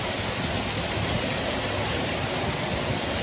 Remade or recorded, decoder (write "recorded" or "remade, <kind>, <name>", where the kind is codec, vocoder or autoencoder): recorded